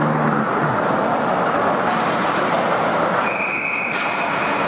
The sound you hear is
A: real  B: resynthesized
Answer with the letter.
A